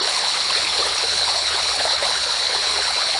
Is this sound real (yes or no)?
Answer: no